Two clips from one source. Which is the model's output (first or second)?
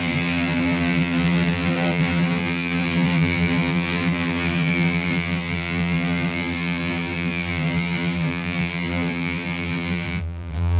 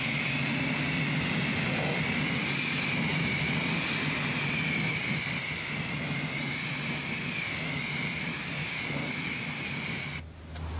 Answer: first